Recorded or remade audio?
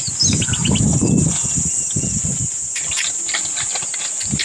recorded